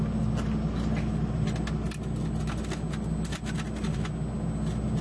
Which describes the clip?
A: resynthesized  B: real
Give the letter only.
B